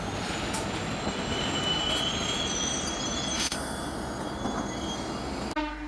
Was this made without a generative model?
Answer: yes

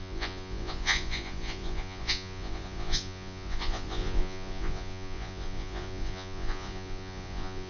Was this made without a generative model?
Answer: no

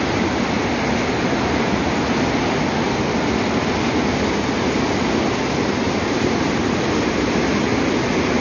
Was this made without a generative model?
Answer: yes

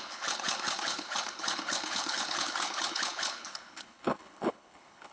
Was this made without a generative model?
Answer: no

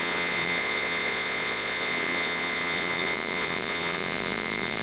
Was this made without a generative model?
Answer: no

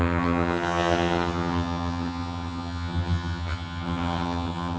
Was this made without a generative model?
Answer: no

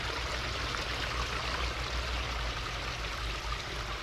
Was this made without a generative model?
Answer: yes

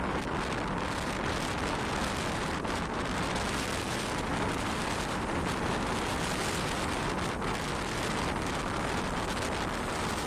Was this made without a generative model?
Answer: yes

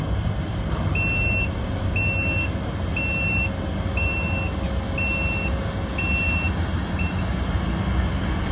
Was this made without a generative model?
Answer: yes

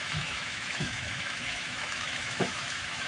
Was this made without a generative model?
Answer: no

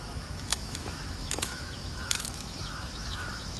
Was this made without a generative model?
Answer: no